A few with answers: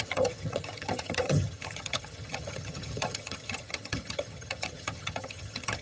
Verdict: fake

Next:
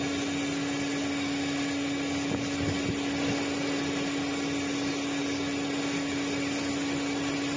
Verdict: real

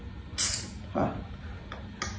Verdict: real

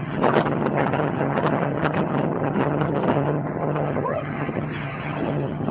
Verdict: fake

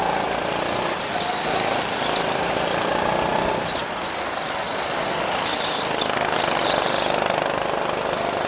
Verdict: real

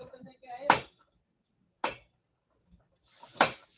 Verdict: real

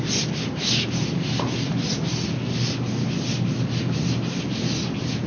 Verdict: real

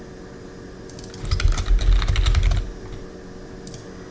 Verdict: real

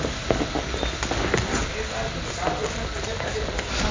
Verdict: real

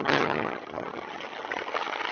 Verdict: fake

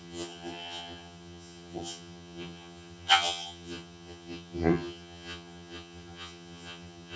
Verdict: fake